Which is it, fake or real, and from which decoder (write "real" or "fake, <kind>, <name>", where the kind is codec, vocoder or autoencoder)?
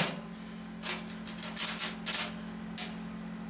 real